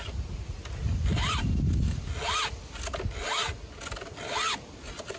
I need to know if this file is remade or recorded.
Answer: recorded